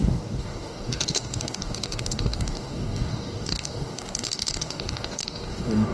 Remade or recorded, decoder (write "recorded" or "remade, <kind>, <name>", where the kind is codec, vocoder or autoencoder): remade, codec, DAC